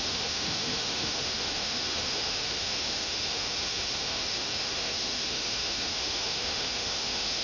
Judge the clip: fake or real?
fake